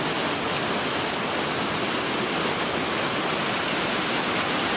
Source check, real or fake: real